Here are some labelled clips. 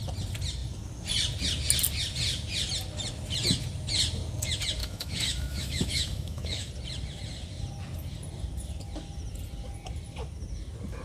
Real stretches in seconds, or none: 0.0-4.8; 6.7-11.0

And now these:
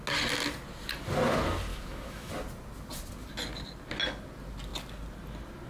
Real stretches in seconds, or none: 0.0-1.7; 2.3-5.7

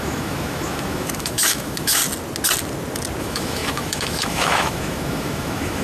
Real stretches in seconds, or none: 2.0-3.2

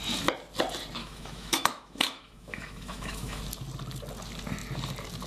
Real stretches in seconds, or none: 0.0-1.0; 3.4-5.3

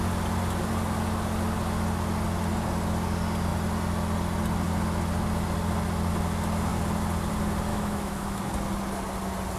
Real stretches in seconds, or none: 0.0-7.7; 8.5-9.6